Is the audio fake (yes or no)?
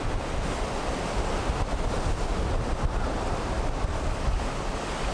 no